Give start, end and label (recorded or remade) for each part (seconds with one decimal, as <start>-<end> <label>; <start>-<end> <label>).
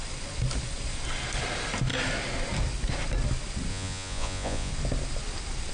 0.0-3.7 recorded; 3.7-4.7 remade; 4.7-5.7 recorded